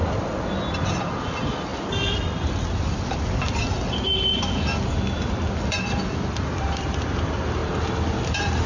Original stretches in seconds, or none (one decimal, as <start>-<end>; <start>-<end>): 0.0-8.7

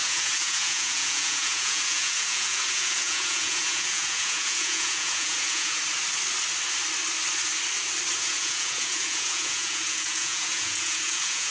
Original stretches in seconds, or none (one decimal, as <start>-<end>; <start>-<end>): 5.8-8.1

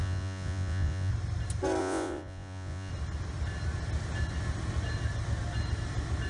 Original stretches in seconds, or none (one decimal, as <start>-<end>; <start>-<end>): 1.1-1.8; 2.9-6.3

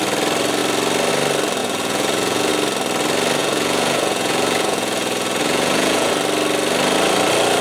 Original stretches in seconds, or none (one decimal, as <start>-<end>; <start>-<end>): 0.0-1.6; 2.5-3.4; 6.1-7.6